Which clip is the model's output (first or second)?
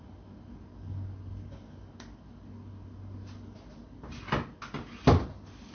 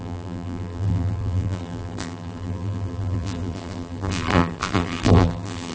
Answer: second